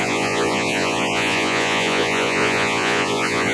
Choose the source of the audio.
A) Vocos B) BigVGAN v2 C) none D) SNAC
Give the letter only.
A